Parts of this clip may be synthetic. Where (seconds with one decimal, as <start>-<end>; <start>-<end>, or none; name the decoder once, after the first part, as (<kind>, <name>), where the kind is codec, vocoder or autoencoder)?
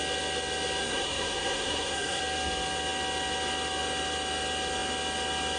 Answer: 0.8-2.2 (codec, SNAC)